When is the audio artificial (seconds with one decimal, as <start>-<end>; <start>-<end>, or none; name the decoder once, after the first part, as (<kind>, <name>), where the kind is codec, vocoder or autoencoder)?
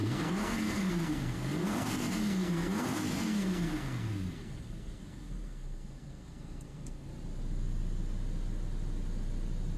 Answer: 0.0-7.1 (codec, SNAC)